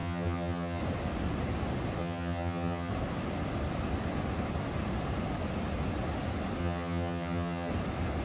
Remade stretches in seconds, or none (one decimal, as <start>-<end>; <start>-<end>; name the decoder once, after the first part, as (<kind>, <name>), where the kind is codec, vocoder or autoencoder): 0.0-0.8 (vocoder, HiFi-GAN); 2.0-2.9; 6.6-7.7